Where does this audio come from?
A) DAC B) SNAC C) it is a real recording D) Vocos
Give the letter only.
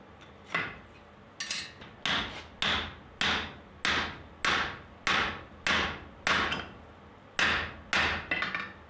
C